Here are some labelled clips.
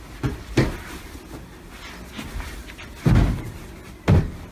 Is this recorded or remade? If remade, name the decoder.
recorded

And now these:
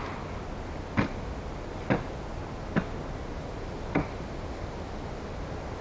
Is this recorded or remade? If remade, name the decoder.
recorded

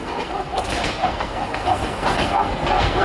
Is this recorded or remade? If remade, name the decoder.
remade, codec, SNAC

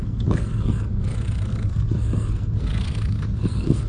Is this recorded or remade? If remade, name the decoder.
remade, codec, SNAC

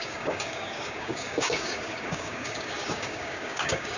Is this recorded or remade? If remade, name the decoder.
remade, codec, DAC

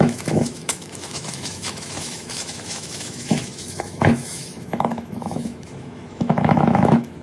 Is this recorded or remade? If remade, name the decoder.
remade, autoencoder, DAC-VAE